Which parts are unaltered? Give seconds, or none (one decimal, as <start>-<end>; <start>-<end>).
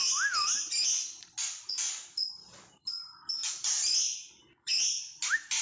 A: 0.0-5.6